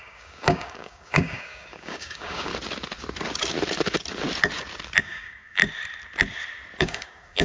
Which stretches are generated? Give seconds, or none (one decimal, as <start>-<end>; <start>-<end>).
0.0-2.5; 5.0-5.6; 6.8-7.4